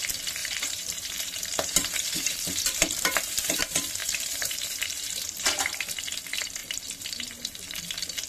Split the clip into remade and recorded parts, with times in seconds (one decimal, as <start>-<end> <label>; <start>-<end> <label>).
0.0-0.4 recorded; 0.4-3.6 remade; 3.6-4.0 recorded; 4.0-5.7 remade; 5.7-8.3 recorded